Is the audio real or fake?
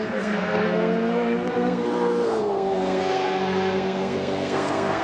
fake